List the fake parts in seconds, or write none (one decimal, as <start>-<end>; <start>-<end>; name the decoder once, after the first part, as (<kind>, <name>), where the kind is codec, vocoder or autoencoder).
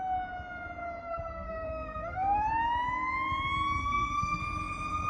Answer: 1.0-2.5 (codec, SNAC); 3.8-4.4